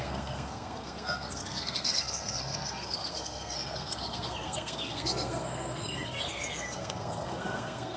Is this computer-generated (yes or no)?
yes